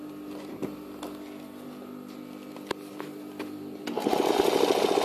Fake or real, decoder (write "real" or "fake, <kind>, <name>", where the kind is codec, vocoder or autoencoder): real